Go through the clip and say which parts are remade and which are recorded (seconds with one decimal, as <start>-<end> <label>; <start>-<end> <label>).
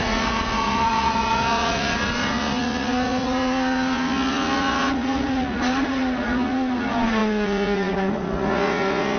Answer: 0.0-9.2 remade